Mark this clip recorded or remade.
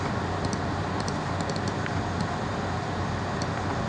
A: recorded